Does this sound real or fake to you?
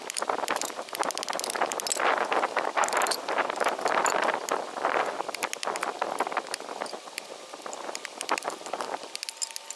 real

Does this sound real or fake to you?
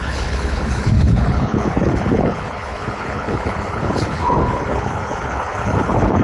fake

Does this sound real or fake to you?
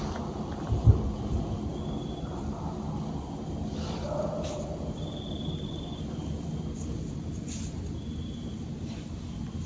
real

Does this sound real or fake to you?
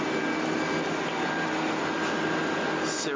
real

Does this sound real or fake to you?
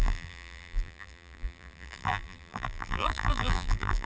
fake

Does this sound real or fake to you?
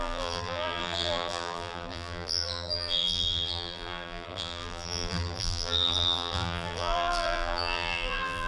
fake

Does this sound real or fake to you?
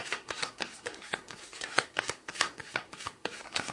fake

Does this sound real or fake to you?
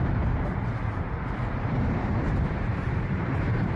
fake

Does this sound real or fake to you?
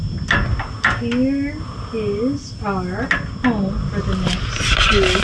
real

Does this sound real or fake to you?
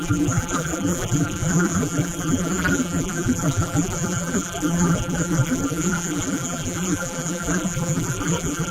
fake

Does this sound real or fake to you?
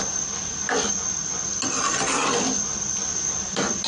real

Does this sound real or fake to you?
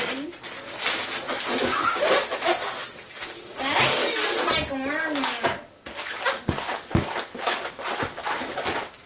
real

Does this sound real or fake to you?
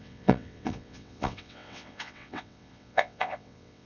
fake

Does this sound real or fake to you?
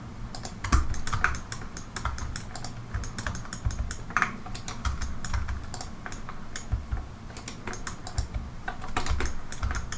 real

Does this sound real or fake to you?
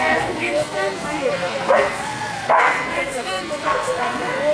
fake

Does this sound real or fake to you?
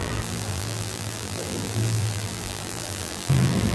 fake